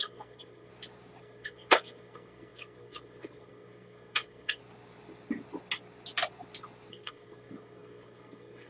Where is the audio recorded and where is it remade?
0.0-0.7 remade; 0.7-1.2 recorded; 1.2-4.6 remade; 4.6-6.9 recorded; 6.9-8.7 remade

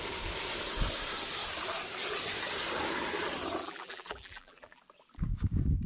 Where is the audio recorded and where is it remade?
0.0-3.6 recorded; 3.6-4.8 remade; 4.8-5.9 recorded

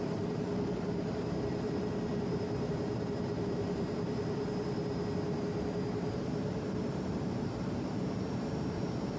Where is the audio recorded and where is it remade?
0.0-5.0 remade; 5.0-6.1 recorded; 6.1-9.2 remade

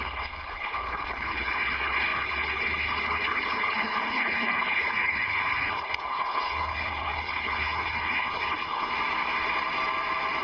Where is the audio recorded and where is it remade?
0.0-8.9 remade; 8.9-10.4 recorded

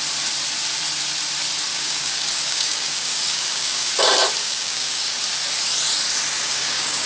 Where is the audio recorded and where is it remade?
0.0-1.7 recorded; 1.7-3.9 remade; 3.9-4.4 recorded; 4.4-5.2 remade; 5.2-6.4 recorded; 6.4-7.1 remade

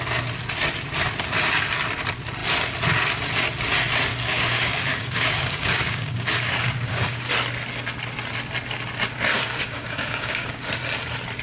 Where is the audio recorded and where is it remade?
0.0-4.1 recorded; 4.1-7.3 remade; 7.3-9.3 recorded; 9.3-10.7 remade; 10.7-11.4 recorded

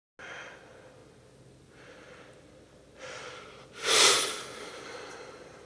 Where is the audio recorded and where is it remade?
0.0-5.7 recorded